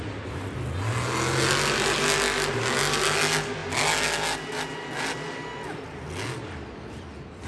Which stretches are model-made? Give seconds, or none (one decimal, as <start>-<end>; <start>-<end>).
none